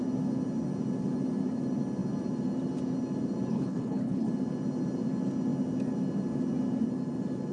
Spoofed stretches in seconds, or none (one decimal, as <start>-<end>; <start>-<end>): 3.5-4.3